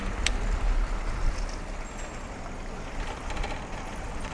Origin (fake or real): real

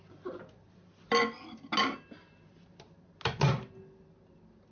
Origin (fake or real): real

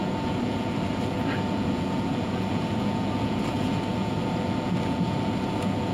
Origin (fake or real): fake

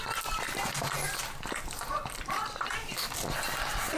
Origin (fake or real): fake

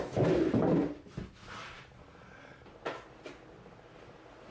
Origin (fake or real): real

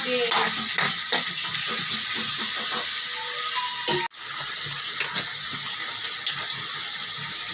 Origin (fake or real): real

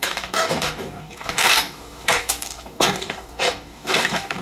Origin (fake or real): fake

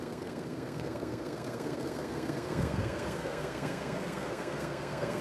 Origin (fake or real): fake